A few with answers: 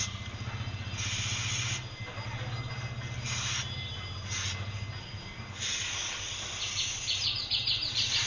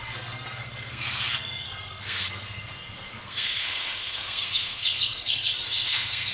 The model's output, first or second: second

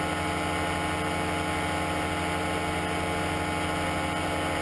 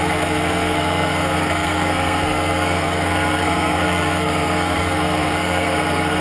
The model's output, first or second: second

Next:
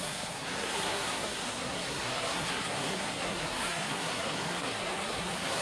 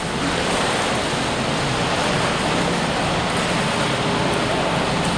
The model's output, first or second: first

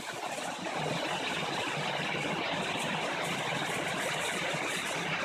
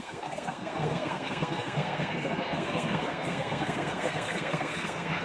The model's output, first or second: second